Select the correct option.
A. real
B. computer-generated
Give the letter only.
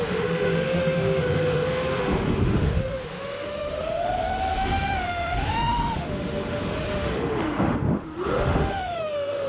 B